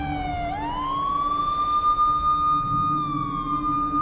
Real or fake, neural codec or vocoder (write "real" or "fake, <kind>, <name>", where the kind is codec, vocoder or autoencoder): real